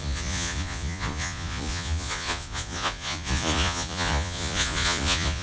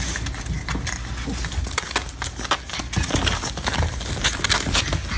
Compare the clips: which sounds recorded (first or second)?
second